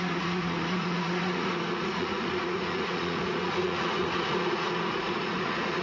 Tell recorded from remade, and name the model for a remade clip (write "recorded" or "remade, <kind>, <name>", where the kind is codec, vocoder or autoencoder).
remade, vocoder, Vocos